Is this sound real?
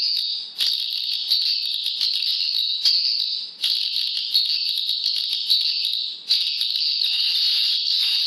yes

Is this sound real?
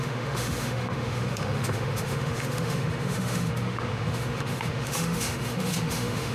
no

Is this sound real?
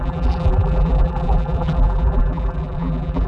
no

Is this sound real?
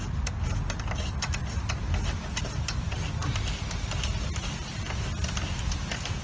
yes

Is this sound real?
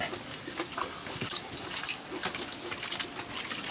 yes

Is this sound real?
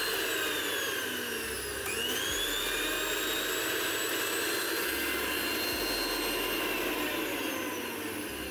yes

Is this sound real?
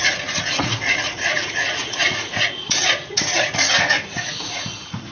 no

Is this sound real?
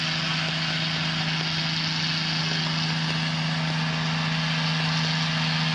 yes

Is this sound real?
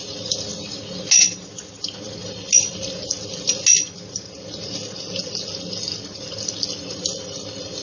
yes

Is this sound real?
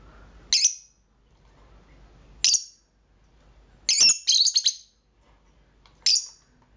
yes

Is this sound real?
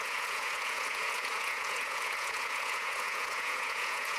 no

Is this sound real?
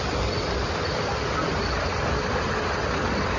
yes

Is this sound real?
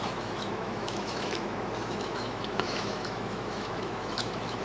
no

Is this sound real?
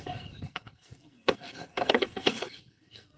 no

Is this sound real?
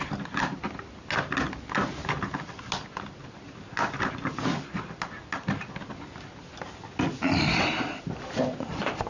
yes